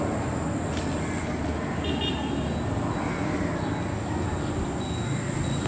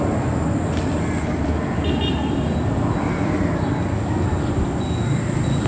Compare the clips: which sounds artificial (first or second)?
second